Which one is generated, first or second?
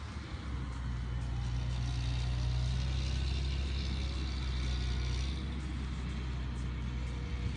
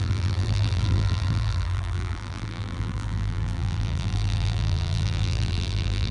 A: second